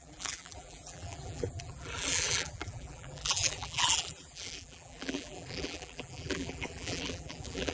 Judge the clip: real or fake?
fake